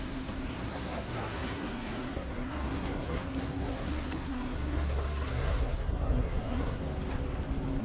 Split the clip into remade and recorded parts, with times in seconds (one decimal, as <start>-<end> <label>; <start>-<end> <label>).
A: 0.0-6.8 remade; 6.8-7.8 recorded